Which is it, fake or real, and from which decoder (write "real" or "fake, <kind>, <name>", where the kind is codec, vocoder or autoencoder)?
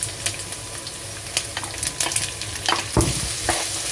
real